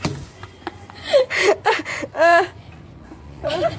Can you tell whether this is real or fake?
fake